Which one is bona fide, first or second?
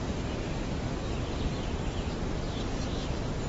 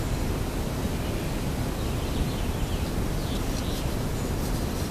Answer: second